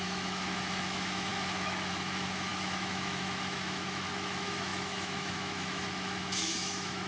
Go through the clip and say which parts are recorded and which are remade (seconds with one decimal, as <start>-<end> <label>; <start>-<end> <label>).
0.0-7.1 remade